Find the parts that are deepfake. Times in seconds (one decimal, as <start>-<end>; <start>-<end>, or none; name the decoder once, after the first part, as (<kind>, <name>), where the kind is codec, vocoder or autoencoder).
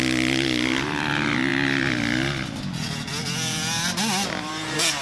none